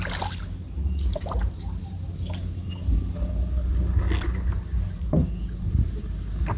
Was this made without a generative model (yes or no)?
yes